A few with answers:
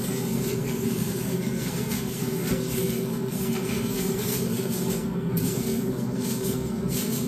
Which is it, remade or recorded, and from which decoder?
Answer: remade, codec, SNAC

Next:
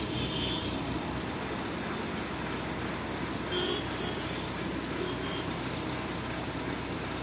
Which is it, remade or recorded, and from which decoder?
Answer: recorded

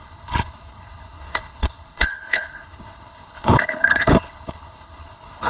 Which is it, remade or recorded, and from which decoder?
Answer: remade, codec, HILCodec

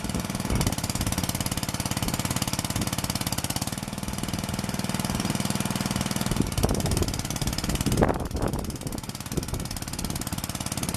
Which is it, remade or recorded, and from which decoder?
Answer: recorded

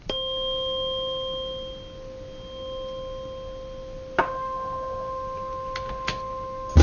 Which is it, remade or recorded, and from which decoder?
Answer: recorded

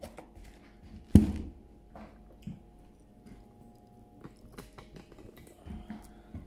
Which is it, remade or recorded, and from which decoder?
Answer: recorded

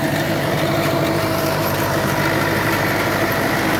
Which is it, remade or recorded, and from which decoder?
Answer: remade, vocoder, BigVGAN v2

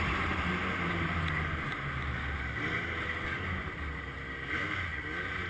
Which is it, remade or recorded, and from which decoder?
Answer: recorded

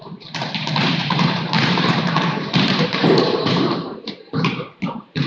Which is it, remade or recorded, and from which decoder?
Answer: remade, vocoder, BigVGAN v2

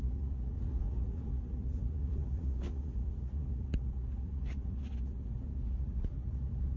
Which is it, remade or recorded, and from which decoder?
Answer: remade, vocoder, Vocos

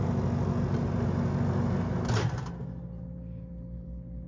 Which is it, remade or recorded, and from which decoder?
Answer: recorded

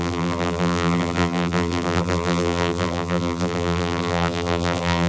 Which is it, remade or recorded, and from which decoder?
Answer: remade, vocoder, BigVGAN v2